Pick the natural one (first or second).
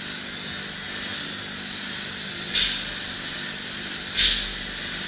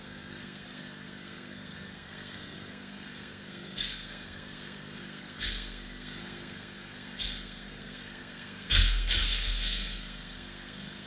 first